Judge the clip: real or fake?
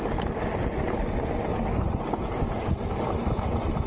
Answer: real